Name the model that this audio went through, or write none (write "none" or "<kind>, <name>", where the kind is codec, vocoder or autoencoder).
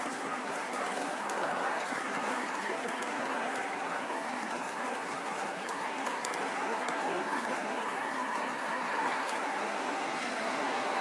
codec, SNAC